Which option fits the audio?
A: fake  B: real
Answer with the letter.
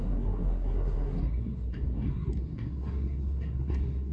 A